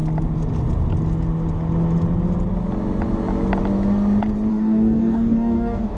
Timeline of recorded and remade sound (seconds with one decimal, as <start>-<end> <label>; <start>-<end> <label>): 0.0-4.5 recorded; 4.5-6.0 remade